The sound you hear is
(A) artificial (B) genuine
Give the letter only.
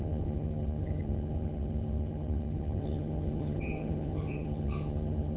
A